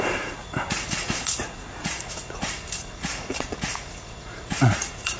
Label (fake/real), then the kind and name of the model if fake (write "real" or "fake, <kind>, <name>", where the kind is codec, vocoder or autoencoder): fake, vocoder, Vocos